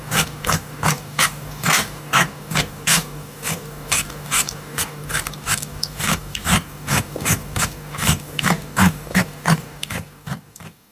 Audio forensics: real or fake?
fake